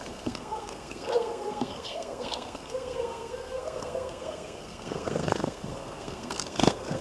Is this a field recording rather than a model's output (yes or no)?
no